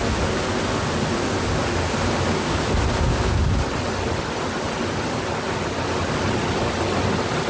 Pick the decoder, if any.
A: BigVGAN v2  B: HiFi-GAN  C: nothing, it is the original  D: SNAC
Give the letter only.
C